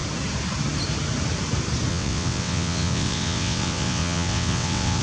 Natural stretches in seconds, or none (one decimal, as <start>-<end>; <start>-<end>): 0.0-1.9